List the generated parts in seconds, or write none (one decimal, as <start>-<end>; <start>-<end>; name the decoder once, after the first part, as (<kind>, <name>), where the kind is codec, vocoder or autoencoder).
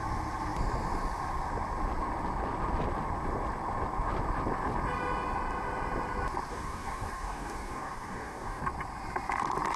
6.5-8.6 (codec, DAC)